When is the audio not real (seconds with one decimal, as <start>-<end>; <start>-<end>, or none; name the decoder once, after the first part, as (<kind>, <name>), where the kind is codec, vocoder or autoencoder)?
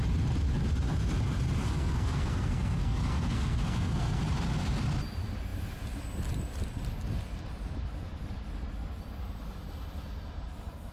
1.6-4.2 (codec, SNAC)